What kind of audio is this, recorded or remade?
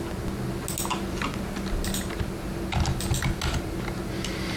recorded